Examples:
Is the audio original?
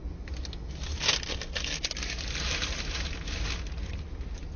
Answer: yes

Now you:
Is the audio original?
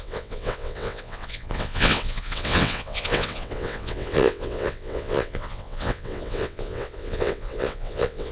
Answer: no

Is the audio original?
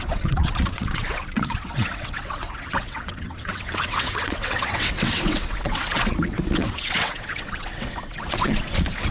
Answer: no